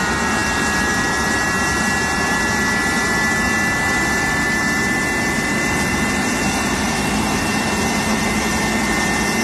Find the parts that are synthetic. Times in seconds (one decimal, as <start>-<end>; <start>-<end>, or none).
none